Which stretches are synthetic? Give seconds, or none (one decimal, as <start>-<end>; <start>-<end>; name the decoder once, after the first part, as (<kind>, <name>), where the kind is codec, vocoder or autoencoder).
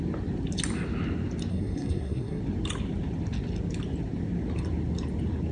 1.5-2.4 (codec, SNAC)